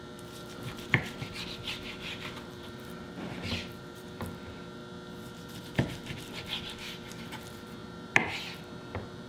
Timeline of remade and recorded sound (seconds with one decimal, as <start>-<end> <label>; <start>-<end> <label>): 0.0-4.8 remade; 4.8-5.6 recorded; 5.6-9.3 remade

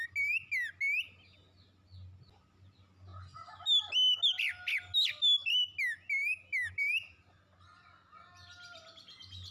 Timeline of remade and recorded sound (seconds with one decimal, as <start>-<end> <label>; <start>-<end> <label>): 0.0-9.5 recorded

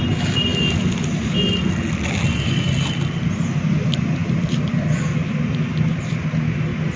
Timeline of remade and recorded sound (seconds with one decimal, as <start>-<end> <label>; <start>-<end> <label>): 0.0-7.0 recorded

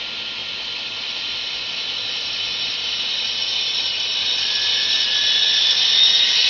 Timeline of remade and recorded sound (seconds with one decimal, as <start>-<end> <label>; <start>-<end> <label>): 0.0-0.4 recorded; 0.4-4.3 remade; 4.3-4.8 recorded; 4.8-5.4 remade; 5.4-6.5 recorded